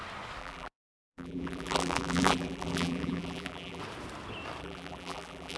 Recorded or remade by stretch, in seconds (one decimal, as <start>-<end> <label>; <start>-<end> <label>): 0.0-0.4 recorded; 0.4-3.8 remade; 3.8-4.6 recorded; 4.6-5.6 remade